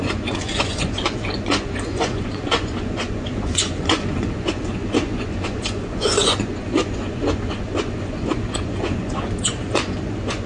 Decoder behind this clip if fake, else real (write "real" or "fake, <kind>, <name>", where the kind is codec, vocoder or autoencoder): fake, vocoder, Vocos